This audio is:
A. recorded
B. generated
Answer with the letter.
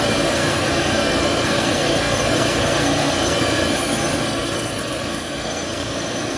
B